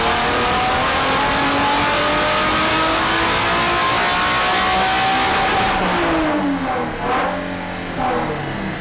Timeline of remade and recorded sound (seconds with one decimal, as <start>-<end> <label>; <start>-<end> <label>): 0.0-2.7 recorded; 2.7-3.4 remade; 3.4-8.8 recorded